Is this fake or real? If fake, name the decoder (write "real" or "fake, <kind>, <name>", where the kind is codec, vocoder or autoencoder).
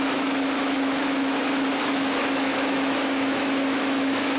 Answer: fake, autoencoder, DAC-VAE